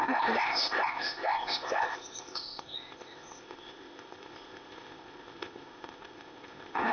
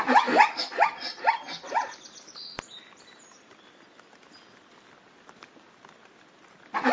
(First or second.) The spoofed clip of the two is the first